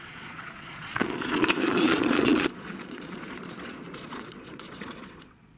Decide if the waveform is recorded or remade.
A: remade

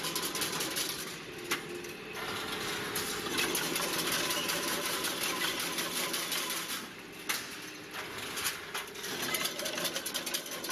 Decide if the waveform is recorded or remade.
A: recorded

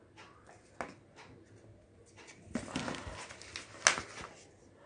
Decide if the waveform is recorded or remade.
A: recorded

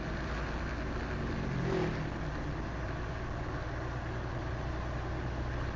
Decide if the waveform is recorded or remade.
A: recorded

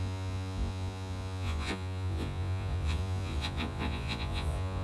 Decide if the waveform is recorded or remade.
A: remade